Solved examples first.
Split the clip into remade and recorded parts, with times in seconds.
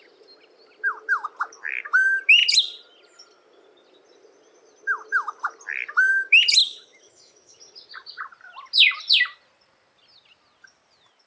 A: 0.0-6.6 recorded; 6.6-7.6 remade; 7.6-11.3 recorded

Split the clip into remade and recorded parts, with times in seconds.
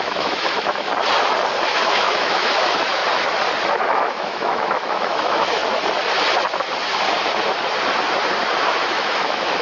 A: 0.0-0.9 remade; 0.9-1.7 recorded; 1.7-3.0 remade; 3.0-3.7 recorded; 3.7-5.6 remade; 5.6-8.8 recorded; 8.8-9.6 remade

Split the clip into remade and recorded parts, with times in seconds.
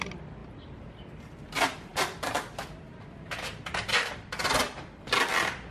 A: 0.0-5.7 recorded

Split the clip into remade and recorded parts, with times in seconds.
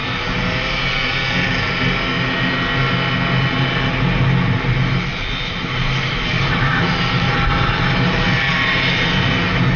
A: 0.0-5.1 recorded; 5.1-9.3 remade; 9.3-9.8 recorded